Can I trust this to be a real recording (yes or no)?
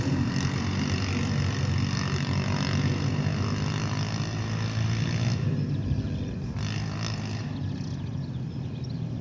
yes